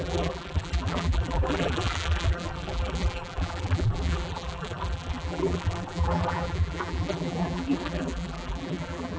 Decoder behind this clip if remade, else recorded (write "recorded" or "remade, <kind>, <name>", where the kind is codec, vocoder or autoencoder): remade, vocoder, BigVGAN v2